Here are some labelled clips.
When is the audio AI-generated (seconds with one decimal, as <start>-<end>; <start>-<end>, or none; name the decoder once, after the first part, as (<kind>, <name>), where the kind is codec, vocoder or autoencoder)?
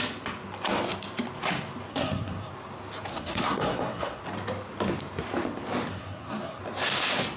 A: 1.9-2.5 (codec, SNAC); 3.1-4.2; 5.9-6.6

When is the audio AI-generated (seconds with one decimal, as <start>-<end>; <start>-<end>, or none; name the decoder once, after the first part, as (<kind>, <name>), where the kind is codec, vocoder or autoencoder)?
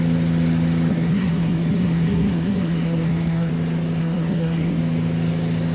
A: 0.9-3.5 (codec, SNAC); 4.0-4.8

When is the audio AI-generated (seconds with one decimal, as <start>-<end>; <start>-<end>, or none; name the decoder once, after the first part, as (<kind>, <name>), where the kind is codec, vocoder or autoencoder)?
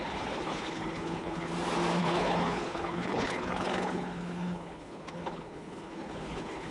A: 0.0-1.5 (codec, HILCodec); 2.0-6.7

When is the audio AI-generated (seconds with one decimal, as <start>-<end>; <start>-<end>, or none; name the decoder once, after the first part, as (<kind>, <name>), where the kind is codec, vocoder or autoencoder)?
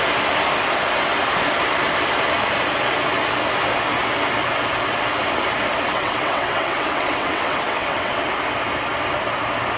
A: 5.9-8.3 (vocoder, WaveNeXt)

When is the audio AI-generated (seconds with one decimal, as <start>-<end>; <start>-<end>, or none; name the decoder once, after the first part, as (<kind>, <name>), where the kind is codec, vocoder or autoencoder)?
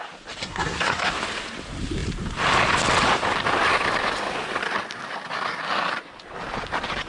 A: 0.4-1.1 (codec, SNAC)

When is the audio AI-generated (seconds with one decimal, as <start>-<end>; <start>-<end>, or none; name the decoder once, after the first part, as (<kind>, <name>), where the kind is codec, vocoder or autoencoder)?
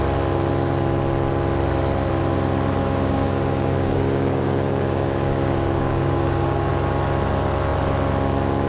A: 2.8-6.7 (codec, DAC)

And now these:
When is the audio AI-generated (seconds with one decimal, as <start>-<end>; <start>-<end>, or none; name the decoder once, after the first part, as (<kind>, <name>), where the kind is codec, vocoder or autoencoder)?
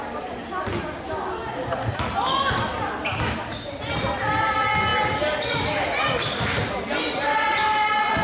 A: 0.0-1.4 (vocoder, BigVGAN v2); 3.7-4.9; 5.5-6.6; 7.2-8.2